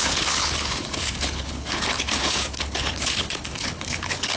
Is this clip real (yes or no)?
no